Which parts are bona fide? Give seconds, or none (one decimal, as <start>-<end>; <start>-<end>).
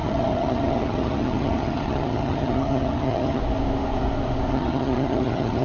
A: 3.4-4.5